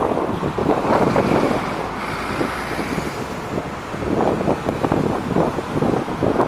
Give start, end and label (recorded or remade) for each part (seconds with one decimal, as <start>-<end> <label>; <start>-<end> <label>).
0.0-0.6 recorded; 0.6-1.8 remade; 1.8-6.5 recorded